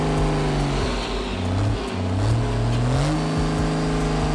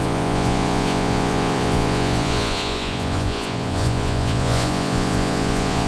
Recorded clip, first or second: first